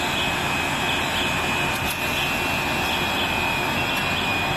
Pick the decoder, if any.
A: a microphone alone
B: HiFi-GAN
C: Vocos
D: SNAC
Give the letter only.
A